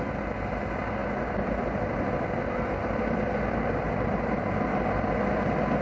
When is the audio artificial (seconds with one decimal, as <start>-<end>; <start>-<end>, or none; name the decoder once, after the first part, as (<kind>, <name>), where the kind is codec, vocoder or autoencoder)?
none